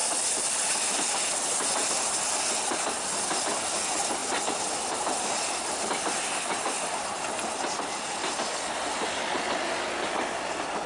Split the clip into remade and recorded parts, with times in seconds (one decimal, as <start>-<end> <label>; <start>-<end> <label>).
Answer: 0.0-1.9 remade; 1.9-10.9 recorded